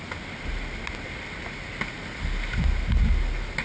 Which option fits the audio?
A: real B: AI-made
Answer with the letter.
A